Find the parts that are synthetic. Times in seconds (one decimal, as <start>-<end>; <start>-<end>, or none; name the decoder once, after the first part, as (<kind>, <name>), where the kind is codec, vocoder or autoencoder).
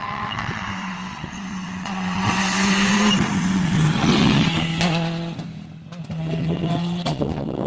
0.0-4.7 (vocoder, WaveNeXt); 6.0-7.7